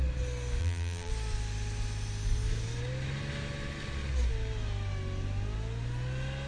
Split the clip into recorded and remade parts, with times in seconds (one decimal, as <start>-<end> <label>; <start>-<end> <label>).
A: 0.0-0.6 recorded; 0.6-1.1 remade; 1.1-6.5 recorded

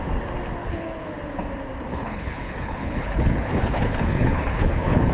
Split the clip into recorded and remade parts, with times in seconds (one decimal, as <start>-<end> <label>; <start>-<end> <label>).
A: 0.0-0.6 recorded; 0.6-1.1 remade; 1.1-1.9 recorded; 1.9-5.1 remade

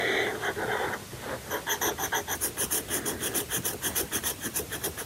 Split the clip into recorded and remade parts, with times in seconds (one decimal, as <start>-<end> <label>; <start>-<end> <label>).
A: 0.0-3.1 recorded; 3.1-5.1 remade

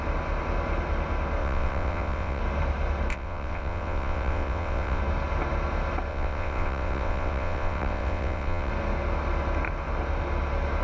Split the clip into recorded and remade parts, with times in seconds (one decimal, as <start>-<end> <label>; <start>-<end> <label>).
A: 0.0-1.4 recorded; 1.4-2.4 remade; 2.4-3.1 recorded; 3.1-5.0 remade; 5.0-6.1 recorded; 6.1-8.7 remade; 8.7-10.8 recorded